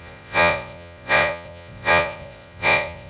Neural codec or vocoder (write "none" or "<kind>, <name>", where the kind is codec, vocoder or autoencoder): vocoder, Vocos